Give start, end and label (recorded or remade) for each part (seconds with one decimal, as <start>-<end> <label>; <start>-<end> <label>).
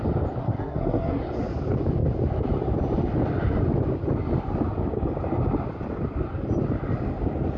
0.0-0.4 recorded; 0.4-1.2 remade; 1.2-7.6 recorded